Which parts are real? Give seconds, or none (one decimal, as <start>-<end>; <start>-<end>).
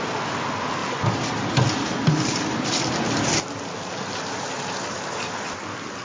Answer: 0.0-6.0